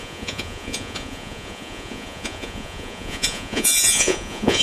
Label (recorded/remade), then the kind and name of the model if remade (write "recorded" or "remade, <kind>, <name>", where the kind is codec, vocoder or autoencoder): remade, vocoder, Vocos